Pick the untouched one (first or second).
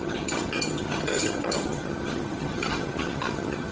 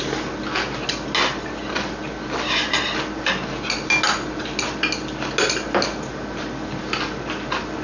second